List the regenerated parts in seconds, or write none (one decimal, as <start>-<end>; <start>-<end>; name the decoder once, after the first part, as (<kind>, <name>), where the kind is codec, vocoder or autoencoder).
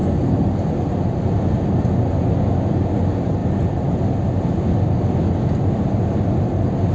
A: none